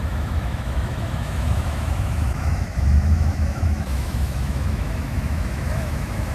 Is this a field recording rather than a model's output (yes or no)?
no